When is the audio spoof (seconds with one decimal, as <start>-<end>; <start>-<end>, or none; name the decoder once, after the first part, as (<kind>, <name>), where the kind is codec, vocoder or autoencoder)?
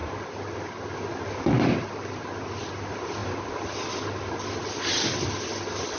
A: 2.7-3.2 (vocoder, BigVGAN v2)